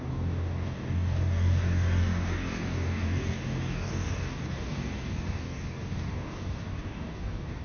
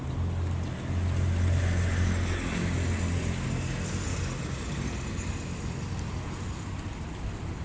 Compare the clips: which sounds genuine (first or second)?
second